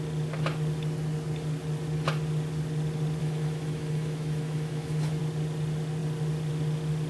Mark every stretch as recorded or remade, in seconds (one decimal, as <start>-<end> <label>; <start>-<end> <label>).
0.0-3.2 recorded; 3.2-5.2 remade; 5.2-7.1 recorded